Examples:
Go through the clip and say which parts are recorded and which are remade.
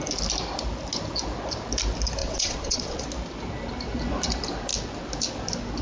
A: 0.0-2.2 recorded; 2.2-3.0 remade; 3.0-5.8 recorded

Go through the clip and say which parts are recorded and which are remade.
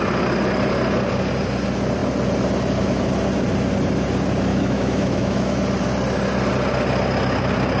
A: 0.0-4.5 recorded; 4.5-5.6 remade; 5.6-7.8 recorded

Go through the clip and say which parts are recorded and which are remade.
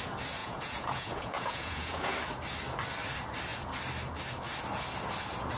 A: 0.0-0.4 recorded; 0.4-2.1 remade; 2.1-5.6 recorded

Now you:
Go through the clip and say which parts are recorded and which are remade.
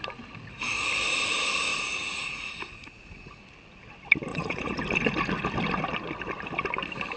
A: 0.0-1.7 recorded; 1.7-3.4 remade; 3.4-4.3 recorded; 4.3-4.8 remade; 4.8-7.2 recorded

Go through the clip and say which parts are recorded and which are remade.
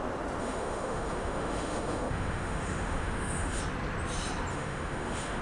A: 0.0-0.4 recorded; 0.4-3.6 remade; 3.6-4.5 recorded; 4.5-5.4 remade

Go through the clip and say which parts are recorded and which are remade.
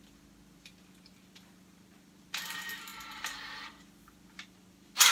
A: 0.0-5.1 remade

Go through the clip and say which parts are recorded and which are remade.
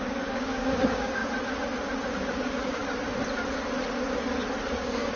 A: 0.0-1.2 remade; 1.2-2.1 recorded; 2.1-2.8 remade; 2.8-4.8 recorded; 4.8-5.2 remade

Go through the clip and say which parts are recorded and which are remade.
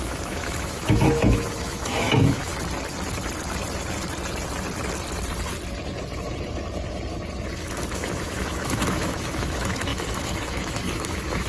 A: 0.0-2.5 remade; 2.5-7.5 recorded; 7.5-11.5 remade